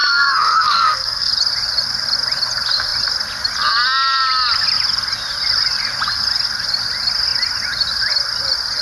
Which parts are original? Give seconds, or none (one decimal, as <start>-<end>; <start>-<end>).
1.3-8.8